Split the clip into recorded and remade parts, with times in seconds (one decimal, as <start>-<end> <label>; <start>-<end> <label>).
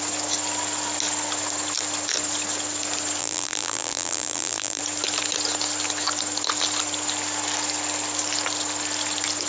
0.0-3.2 recorded; 3.2-4.8 remade; 4.8-9.5 recorded